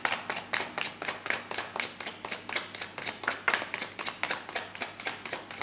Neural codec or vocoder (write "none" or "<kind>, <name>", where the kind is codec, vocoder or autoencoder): none